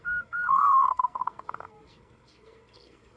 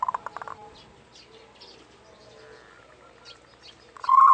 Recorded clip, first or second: second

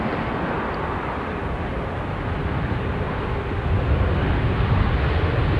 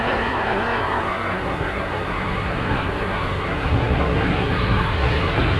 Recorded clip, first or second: first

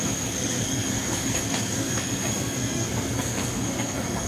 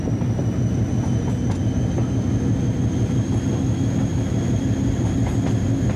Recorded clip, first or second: second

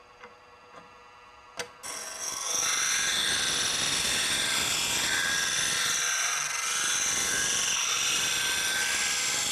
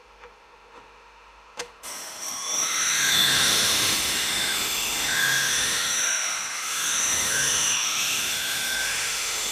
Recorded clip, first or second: first